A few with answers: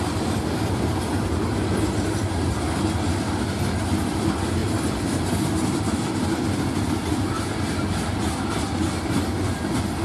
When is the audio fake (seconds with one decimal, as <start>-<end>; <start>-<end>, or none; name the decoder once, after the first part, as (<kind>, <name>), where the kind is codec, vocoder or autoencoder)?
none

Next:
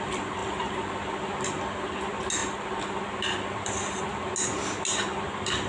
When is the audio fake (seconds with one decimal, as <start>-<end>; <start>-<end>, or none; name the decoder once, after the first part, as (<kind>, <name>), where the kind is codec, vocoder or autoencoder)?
0.4-1.2 (vocoder, BigVGAN v2)

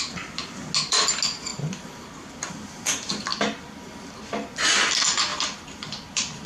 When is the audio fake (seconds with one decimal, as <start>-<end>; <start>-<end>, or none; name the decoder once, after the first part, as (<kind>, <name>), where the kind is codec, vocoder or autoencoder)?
1.5-2.5 (vocoder, BigVGAN v2); 3.3-3.8; 5.3-6.5

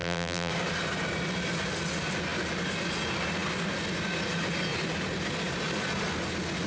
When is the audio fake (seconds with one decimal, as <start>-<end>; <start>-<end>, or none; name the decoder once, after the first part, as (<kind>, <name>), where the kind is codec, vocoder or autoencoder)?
0.0-0.5 (vocoder, BigVGAN v2)

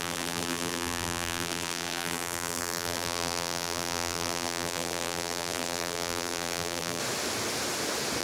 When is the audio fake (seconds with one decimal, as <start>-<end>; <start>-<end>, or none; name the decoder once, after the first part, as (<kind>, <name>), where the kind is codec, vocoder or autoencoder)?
0.0-7.0 (vocoder, BigVGAN v2)

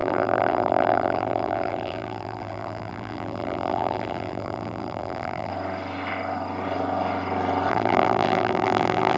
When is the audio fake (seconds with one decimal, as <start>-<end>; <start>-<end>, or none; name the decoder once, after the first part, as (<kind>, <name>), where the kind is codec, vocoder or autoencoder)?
0.0-5.5 (vocoder, BigVGAN v2); 7.7-9.2